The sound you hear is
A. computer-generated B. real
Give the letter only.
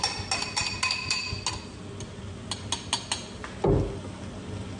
B